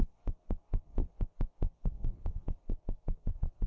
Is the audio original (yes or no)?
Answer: no